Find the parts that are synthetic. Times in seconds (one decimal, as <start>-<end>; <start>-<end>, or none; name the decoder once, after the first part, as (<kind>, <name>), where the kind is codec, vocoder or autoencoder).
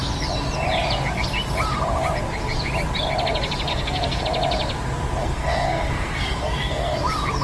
3.7-4.2 (codec, SNAC); 5.2-7.0